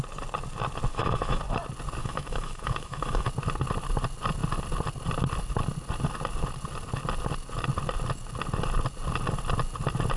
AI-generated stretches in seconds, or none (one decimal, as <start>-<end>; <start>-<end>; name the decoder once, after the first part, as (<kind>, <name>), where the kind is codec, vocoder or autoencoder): 0.9-1.4 (autoencoder, DAC-VAE); 2.0-3.3